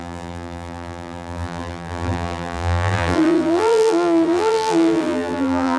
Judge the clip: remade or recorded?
remade